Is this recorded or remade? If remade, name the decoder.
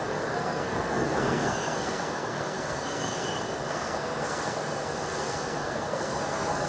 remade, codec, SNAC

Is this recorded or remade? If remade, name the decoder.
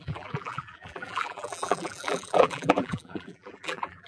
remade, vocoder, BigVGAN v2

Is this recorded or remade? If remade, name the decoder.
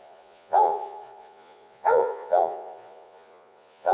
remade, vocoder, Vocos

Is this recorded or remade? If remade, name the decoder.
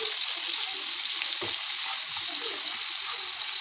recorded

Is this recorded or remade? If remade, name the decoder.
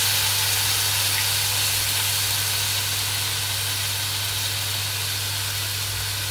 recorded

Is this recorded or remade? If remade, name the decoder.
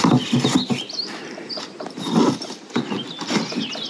recorded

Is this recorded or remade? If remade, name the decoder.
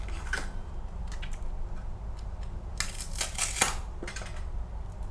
recorded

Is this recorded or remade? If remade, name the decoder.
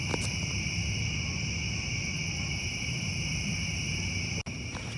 recorded